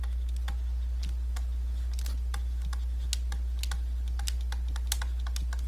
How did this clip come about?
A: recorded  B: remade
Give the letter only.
A